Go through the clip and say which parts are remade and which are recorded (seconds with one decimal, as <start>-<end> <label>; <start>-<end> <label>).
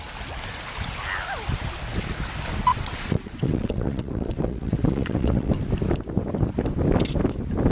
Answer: 0.0-2.7 recorded; 2.7-5.5 remade; 5.5-7.7 recorded